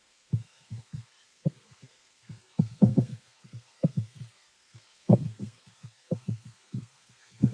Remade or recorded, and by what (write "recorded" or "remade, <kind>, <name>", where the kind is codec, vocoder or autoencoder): remade, codec, SNAC